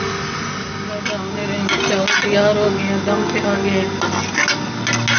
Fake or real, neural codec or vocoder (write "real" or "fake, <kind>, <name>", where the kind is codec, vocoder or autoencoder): real